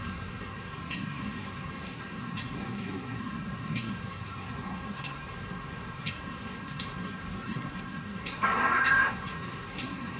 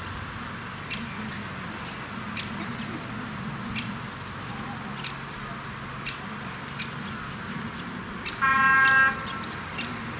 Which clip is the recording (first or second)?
second